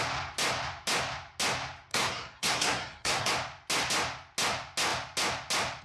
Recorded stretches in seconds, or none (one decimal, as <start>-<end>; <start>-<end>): 0.0-1.9; 3.3-5.8